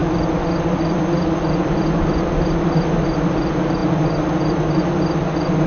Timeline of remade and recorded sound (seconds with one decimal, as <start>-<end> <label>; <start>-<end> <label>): 0.0-5.7 recorded